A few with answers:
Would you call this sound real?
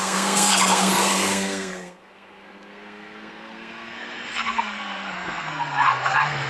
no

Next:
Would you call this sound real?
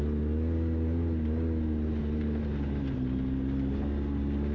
yes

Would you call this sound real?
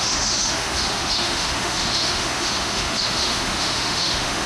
no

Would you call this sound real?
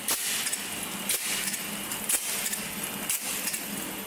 yes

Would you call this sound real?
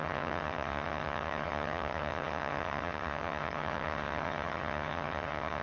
no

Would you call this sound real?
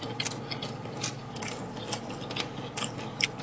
yes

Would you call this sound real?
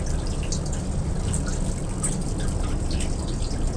yes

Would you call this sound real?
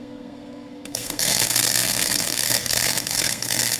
no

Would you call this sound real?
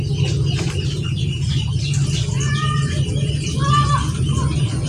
yes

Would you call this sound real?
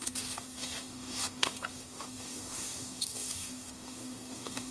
no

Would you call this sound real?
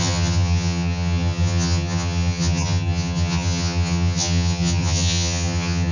no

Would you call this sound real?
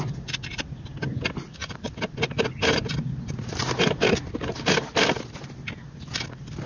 yes